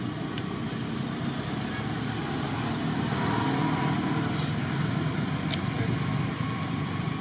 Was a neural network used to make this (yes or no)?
no